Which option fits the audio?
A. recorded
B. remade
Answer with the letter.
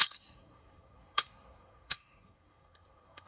B